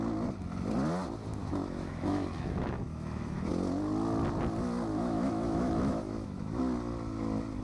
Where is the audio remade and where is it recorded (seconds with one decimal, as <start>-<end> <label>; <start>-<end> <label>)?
0.0-1.4 recorded; 1.4-3.5 remade; 3.5-4.9 recorded; 4.9-6.6 remade; 6.6-7.6 recorded

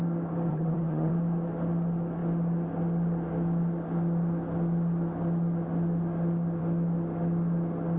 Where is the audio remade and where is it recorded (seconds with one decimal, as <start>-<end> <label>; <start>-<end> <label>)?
0.0-0.5 recorded; 0.5-1.1 remade; 1.1-8.0 recorded